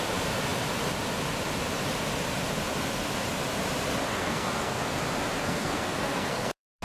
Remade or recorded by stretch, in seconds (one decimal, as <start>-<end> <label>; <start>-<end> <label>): 0.0-4.1 recorded; 4.1-5.0 remade; 5.0-5.4 recorded; 5.4-6.8 remade